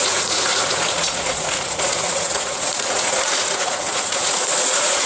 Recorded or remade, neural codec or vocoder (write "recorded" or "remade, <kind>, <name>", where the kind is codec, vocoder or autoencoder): remade, vocoder, Vocos